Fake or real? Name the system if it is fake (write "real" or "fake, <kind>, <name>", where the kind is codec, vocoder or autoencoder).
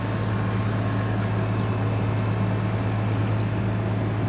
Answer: real